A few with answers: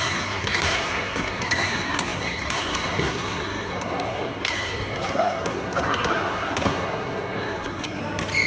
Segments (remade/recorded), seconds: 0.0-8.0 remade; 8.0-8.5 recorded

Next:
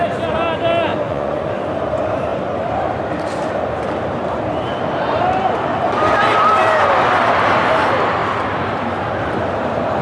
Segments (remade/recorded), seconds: 0.0-0.9 recorded; 0.9-1.5 remade; 1.5-10.0 recorded